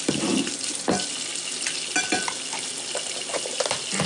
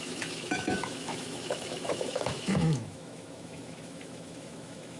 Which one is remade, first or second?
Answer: second